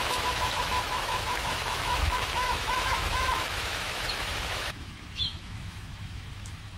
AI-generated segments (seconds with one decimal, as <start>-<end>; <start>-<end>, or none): 0.0-6.8